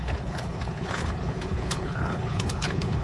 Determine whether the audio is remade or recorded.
remade